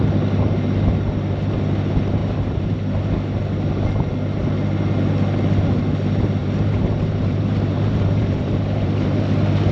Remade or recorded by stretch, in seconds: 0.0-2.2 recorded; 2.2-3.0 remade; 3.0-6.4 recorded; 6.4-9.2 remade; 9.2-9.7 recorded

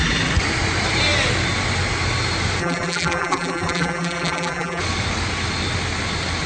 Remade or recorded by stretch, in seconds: 0.0-2.6 recorded; 2.6-4.8 remade; 4.8-6.5 recorded

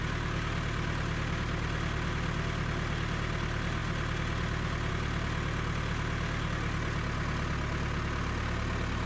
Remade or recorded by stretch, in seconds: 0.0-9.1 recorded

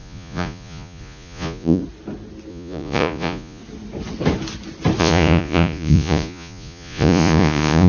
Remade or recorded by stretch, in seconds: 0.0-1.8 remade; 1.8-2.5 recorded; 2.5-3.6 remade; 3.6-5.0 recorded; 5.0-7.9 remade

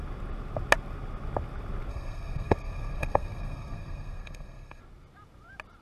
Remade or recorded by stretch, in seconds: 0.0-1.9 recorded; 1.9-4.8 remade; 4.8-5.8 recorded

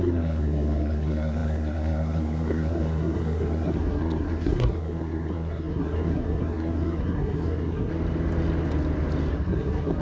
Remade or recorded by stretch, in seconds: 0.0-7.9 remade; 7.9-9.3 recorded; 9.3-10.0 remade